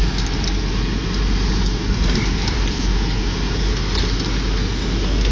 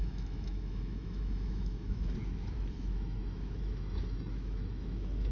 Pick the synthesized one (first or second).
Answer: second